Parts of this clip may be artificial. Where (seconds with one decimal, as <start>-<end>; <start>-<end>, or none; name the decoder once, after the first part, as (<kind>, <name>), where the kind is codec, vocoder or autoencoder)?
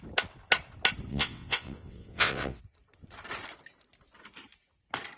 1.1-2.6 (vocoder, WaveNeXt)